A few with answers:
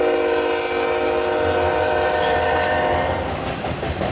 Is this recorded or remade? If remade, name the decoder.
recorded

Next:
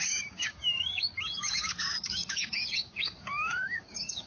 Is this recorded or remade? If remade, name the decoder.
remade, codec, DAC